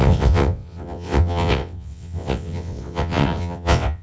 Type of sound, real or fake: fake